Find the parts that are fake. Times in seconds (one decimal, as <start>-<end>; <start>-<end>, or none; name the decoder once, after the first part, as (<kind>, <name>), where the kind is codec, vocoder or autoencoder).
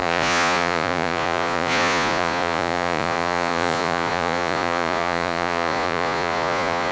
0.0-6.9 (vocoder, Vocos)